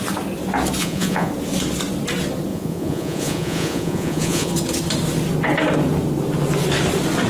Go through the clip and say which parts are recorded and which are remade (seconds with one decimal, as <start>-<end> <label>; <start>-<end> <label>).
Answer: 0.0-0.8 recorded; 0.8-1.3 remade; 1.3-2.5 recorded; 2.5-4.5 remade; 4.5-7.3 recorded